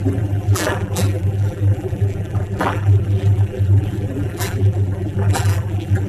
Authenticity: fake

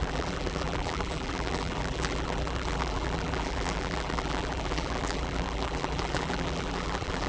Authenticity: fake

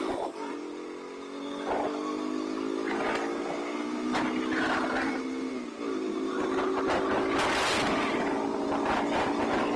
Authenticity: real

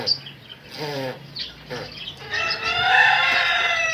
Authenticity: real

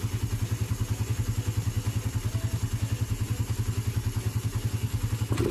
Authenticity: real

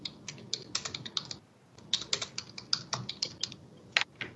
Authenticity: real